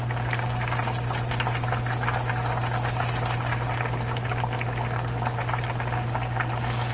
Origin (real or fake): real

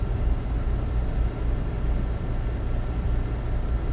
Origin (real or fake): real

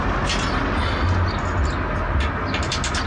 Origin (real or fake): real